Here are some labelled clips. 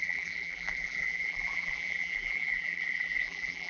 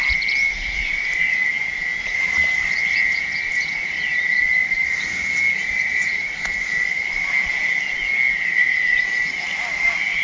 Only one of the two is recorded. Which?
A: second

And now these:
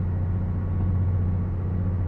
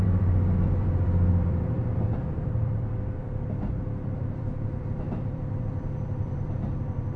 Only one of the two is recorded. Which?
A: first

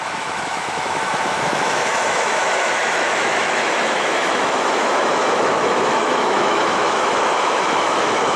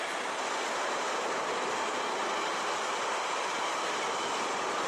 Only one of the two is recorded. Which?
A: second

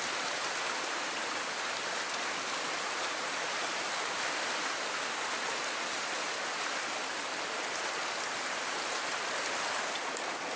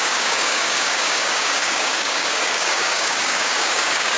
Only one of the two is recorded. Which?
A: first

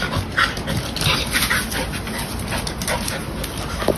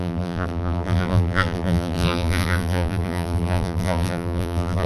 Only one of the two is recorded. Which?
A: first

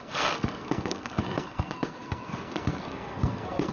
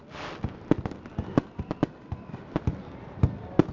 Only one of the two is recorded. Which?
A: second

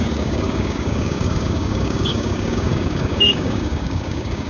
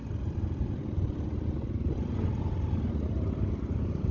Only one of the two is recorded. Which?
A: second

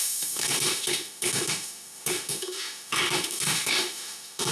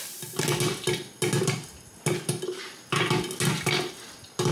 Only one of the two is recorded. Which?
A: second